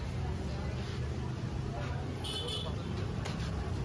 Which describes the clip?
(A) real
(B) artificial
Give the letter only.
A